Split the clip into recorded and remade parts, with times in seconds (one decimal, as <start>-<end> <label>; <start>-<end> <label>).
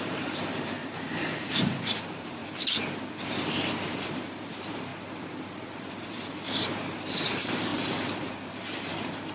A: 0.0-2.4 remade; 2.4-3.5 recorded; 3.5-4.9 remade; 4.9-5.8 recorded; 5.8-9.3 remade